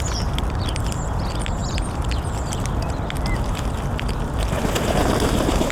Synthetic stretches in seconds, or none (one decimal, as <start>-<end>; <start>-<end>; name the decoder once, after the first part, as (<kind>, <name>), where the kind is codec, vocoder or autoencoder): none

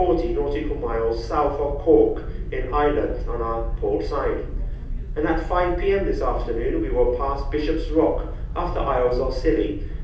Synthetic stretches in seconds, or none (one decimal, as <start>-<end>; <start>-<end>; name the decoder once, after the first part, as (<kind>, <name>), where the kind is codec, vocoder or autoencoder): none

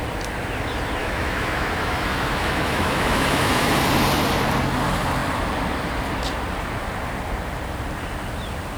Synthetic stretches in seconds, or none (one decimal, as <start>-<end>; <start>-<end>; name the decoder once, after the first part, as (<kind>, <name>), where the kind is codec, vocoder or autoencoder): 1.0-3.8 (autoencoder, DAC-VAE)